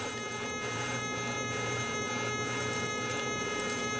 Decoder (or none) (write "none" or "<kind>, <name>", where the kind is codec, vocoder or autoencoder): vocoder, BigVGAN v2